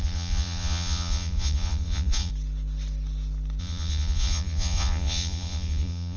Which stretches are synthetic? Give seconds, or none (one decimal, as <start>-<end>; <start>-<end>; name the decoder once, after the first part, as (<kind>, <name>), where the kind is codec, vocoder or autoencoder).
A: 0.0-2.3 (vocoder, Vocos); 3.6-6.2